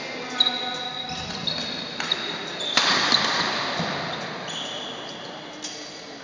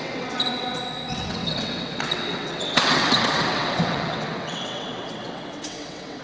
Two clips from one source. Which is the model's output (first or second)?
second